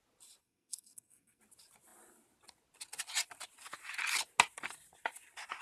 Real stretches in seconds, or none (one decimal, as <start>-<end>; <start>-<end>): 0.0-0.4; 1.4-5.6